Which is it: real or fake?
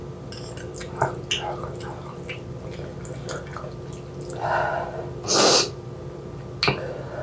real